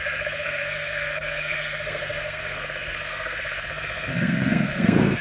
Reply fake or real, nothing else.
fake